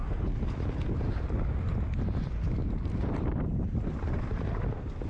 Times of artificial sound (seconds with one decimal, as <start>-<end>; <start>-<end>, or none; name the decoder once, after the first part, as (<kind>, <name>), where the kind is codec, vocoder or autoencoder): 2.6-4.0 (vocoder, BigVGAN v2)